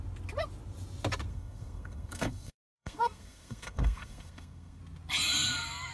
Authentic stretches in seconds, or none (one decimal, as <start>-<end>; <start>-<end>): 0.0-1.3; 4.8-5.9